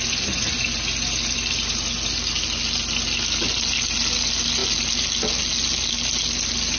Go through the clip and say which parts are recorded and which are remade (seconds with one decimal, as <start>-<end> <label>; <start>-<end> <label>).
0.0-6.8 recorded